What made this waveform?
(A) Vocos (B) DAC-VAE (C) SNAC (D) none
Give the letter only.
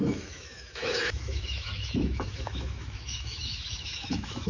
B